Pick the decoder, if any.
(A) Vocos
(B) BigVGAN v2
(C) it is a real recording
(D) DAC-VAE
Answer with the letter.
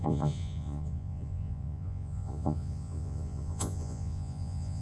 A